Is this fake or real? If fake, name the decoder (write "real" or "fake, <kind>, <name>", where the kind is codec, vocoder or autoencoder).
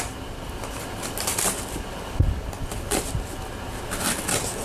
real